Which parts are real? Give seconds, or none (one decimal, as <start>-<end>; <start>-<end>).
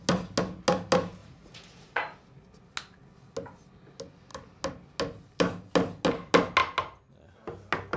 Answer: 0.0-1.2; 2.0-8.0